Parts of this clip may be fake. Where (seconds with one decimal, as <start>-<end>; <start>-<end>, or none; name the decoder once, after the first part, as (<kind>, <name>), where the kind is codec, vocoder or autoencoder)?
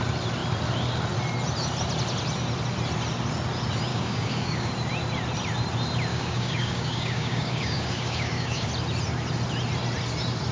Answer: 3.9-4.7 (codec, DAC); 6.1-8.7